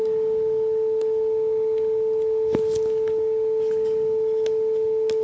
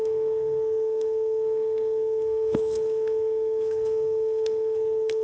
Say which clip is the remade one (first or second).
second